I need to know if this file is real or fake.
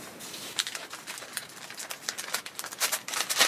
real